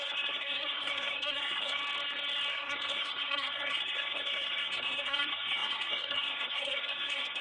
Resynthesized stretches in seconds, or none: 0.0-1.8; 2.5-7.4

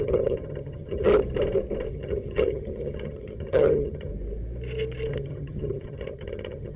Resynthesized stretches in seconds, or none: 0.0-1.1; 1.9-4.1; 5.1-6.8

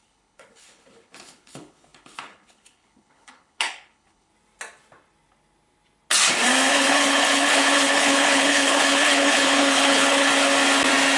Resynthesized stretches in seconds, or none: 0.0-4.3; 6.7-10.3

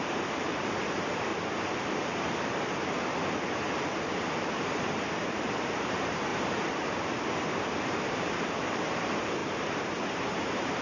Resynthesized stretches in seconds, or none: 0.0-1.3; 4.1-9.4; 10.1-10.8

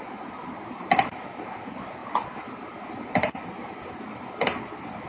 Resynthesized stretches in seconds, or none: none